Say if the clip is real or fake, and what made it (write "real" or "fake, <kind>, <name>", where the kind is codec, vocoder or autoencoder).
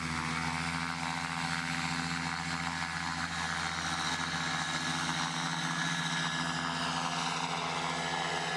real